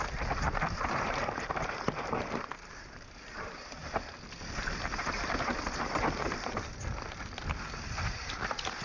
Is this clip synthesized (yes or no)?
no